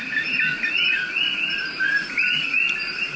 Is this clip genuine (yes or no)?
yes